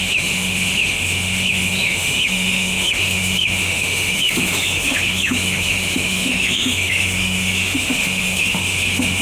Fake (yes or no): yes